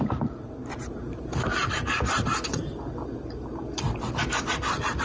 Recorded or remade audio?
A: remade